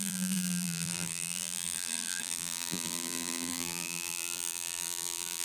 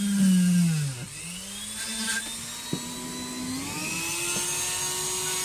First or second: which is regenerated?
first